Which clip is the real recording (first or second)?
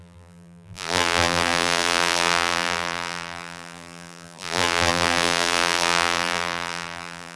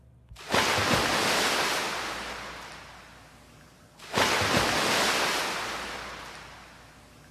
second